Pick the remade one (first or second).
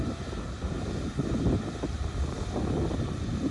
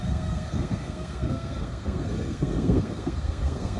second